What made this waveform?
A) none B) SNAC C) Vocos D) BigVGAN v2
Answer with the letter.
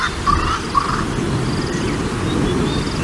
A